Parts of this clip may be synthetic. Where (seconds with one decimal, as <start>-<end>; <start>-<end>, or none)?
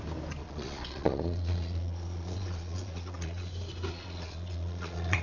0.4-3.5; 3.9-5.2